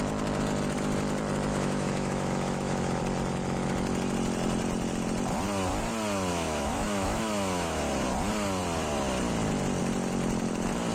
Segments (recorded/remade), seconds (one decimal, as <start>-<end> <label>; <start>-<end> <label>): 0.0-1.5 recorded; 1.5-3.0 remade; 3.0-6.3 recorded; 6.3-7.8 remade; 7.8-10.9 recorded